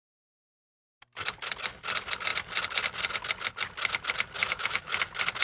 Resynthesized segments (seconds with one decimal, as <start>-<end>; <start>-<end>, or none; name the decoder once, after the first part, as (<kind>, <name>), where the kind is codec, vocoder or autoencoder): 4.4-4.9 (autoencoder, DAC-VAE)

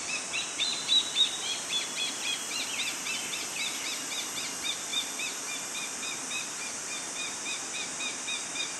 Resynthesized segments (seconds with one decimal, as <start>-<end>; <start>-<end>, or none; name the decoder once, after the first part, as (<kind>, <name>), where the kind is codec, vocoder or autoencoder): 0.7-4.3 (vocoder, BigVGAN v2); 4.9-8.0

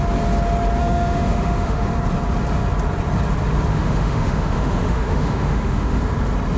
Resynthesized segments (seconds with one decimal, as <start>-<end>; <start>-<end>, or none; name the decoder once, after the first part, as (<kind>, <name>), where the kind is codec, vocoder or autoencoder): 0.8-1.9 (autoencoder, DAC-VAE); 3.7-6.0

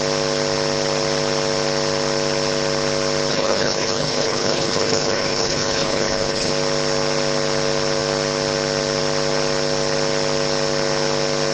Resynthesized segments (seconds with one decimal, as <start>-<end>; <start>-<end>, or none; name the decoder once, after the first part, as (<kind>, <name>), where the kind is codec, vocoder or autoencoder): 3.3-6.5 (codec, HILCodec)

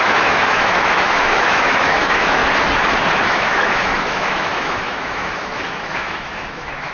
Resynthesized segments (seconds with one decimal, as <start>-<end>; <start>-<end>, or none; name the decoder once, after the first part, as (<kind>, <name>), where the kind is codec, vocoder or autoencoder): 0.0-2.4 (autoencoder, DAC-VAE); 3.2-6.9